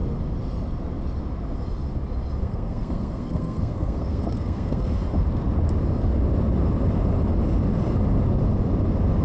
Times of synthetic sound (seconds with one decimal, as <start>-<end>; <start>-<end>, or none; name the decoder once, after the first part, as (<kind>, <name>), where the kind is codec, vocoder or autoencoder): 2.4-4.9 (codec, SNAC)